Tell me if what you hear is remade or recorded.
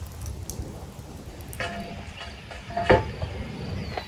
recorded